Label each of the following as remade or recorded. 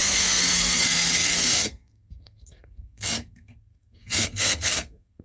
remade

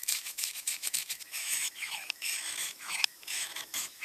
remade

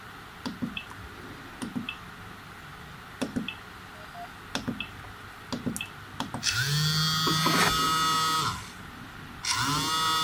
recorded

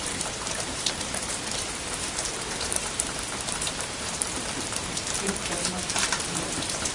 remade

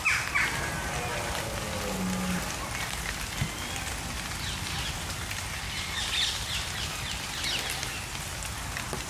recorded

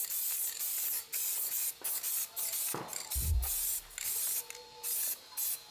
recorded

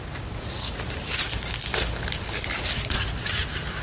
recorded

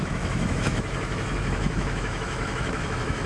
remade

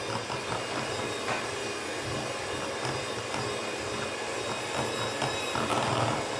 recorded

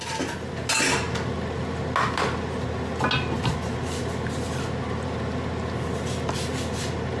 recorded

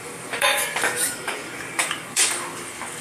remade